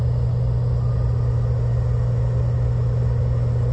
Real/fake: real